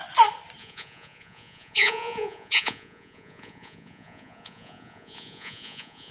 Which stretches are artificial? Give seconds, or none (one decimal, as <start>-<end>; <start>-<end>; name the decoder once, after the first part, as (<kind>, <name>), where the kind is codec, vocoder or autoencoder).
0.6-6.1 (vocoder, Vocos)